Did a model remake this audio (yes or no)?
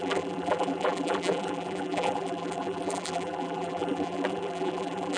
yes